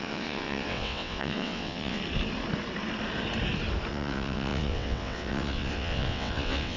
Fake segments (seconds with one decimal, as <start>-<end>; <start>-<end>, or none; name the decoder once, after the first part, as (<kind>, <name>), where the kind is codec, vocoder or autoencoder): 0.0-2.0 (vocoder, WaveNeXt); 3.9-6.8